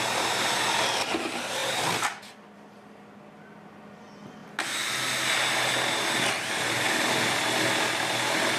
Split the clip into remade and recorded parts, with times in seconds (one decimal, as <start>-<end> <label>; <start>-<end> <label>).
0.0-8.6 recorded